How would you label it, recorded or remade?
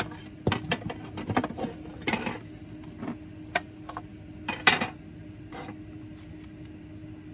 recorded